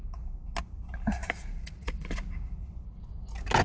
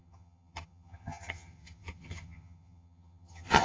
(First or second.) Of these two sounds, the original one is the first